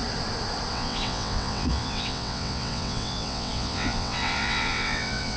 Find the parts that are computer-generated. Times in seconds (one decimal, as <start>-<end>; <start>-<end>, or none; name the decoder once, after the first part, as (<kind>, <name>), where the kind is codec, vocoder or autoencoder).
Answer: 0.7-5.4 (vocoder, WaveNeXt)